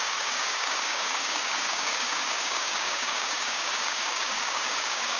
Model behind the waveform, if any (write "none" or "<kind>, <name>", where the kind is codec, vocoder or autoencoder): codec, DAC